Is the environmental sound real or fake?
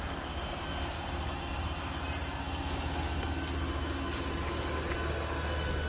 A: real